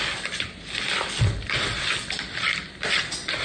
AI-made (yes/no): yes